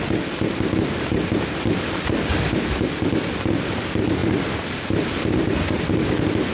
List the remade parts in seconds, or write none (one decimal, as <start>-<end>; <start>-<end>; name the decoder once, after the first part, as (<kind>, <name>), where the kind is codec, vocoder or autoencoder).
none